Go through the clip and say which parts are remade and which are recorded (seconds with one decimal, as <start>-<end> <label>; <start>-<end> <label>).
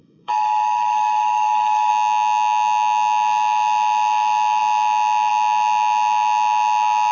0.0-1.9 remade; 1.9-7.1 recorded